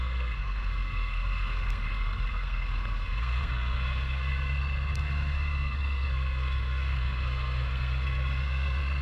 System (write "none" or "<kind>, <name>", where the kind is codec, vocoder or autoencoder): codec, SNAC